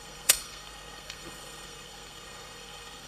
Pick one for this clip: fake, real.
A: fake